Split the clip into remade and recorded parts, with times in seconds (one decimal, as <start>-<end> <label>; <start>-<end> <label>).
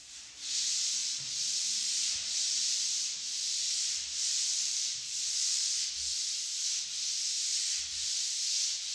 0.0-1.0 recorded; 1.0-5.9 remade; 5.9-8.9 recorded